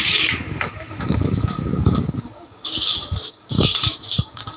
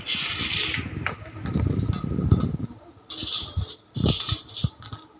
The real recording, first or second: second